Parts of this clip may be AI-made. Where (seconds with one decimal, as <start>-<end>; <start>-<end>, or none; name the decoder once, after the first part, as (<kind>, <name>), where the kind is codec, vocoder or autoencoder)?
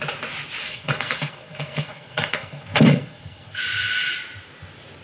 0.6-3.6 (codec, SNAC)